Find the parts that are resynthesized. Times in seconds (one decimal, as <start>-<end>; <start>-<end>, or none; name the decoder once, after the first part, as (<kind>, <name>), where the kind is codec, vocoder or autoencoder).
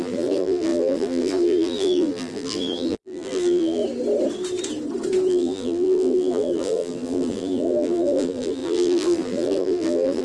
0.0-3.8 (vocoder, BigVGAN v2); 5.3-10.2